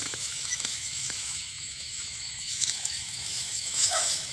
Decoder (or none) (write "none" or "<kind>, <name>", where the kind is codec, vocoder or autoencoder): autoencoder, DAC-VAE